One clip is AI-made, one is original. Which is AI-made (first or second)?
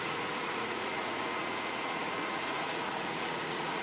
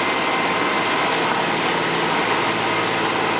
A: first